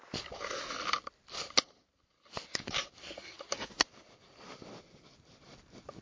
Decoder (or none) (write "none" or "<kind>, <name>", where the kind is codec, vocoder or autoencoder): none